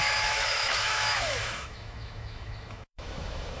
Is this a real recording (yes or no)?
no